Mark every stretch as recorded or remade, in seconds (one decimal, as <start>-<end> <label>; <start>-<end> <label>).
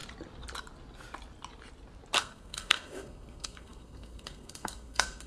0.0-2.2 recorded; 2.2-5.3 remade